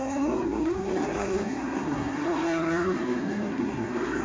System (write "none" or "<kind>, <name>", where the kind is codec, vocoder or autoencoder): codec, SNAC